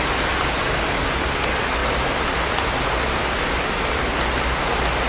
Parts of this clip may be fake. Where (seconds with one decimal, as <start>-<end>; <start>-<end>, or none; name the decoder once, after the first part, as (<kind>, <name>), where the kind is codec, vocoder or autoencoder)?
1.8-4.0 (vocoder, BigVGAN v2)